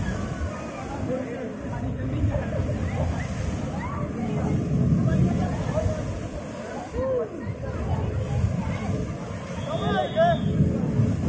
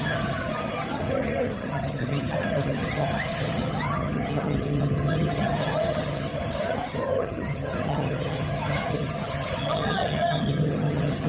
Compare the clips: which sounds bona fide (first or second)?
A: first